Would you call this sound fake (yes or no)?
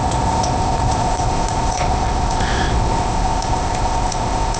yes